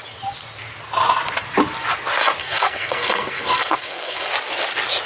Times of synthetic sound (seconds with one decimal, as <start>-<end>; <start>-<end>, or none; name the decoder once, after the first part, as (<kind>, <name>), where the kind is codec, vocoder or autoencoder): 2.4-4.3 (codec, SNAC)